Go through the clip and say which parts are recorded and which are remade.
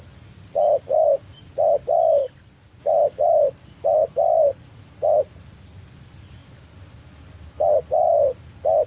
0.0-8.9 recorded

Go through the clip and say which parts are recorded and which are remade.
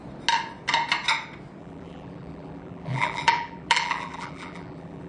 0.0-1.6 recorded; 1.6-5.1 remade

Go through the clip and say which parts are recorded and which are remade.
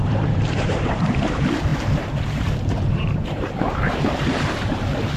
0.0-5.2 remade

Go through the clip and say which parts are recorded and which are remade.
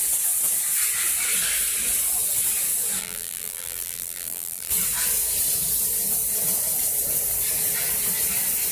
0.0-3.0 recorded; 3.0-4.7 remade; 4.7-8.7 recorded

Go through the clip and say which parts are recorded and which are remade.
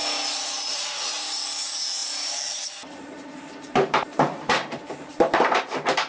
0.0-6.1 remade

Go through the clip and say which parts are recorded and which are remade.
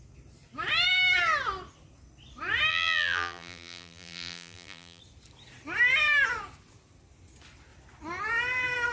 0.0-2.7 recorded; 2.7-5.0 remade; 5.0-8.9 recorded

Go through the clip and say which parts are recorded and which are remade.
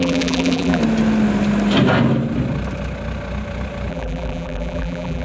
0.0-0.8 remade; 0.8-3.9 recorded; 3.9-5.2 remade